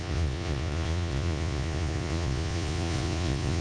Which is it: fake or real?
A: fake